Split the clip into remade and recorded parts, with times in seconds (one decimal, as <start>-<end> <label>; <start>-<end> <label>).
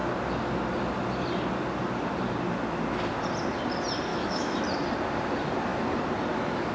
0.0-4.1 recorded; 4.1-4.6 remade; 4.6-6.7 recorded